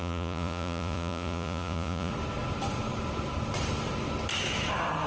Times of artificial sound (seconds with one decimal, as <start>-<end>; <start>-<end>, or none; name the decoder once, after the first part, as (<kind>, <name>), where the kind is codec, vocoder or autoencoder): 0.0-2.1 (vocoder, Vocos)